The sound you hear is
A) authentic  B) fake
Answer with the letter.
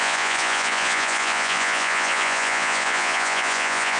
B